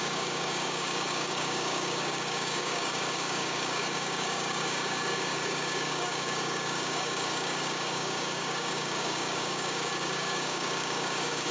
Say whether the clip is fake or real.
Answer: fake